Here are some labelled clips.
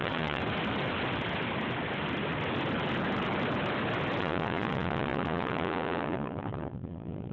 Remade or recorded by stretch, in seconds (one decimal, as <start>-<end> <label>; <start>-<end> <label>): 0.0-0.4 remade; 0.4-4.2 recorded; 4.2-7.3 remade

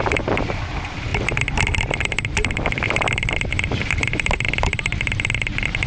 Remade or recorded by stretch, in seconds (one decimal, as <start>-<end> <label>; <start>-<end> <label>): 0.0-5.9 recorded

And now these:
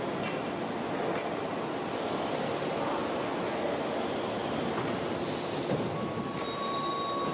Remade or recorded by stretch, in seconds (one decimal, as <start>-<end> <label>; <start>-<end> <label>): 0.0-7.3 recorded

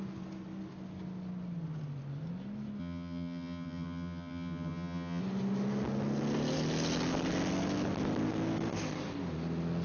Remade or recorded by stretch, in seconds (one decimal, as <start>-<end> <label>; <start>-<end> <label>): 0.0-2.8 recorded; 2.8-5.2 remade; 5.2-9.8 recorded

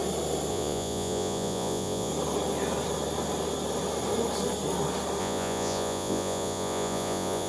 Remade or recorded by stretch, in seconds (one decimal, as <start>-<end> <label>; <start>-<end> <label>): 0.0-0.5 recorded; 0.5-2.1 remade; 2.1-5.2 recorded; 5.2-7.5 remade

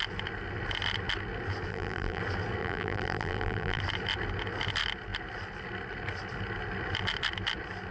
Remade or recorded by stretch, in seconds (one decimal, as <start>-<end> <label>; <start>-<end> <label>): 0.0-1.7 recorded; 1.7-2.2 remade; 2.2-2.6 recorded; 2.6-3.8 remade; 3.8-7.9 recorded

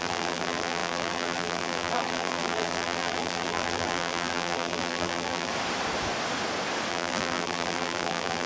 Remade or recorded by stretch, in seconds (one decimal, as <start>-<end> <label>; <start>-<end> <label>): 0.0-5.5 remade; 5.5-6.9 recorded; 6.9-8.5 remade